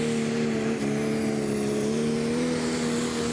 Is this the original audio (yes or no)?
yes